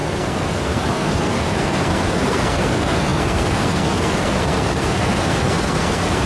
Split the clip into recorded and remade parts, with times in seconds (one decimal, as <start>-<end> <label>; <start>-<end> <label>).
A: 0.0-6.3 remade